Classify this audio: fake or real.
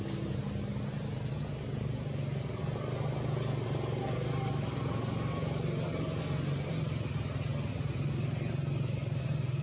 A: real